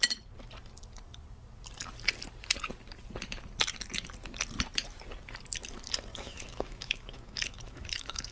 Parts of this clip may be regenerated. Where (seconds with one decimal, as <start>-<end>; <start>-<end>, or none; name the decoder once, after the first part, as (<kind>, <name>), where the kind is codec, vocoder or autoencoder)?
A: 6.1-8.3 (autoencoder, DAC-VAE)